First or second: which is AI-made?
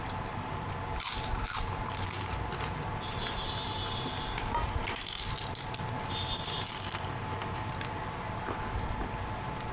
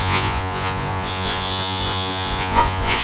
second